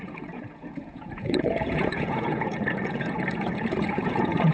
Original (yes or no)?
no